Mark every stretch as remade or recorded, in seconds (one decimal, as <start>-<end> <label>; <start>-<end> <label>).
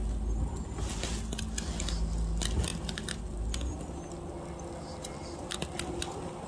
0.0-2.7 recorded; 2.7-4.4 remade; 4.4-6.5 recorded